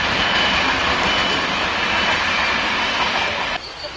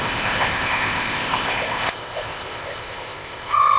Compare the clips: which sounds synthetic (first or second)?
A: second